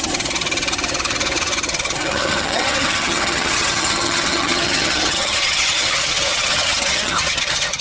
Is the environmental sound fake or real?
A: fake